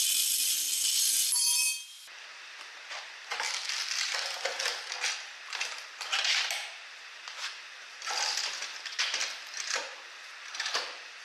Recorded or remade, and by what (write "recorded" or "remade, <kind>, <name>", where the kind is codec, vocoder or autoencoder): recorded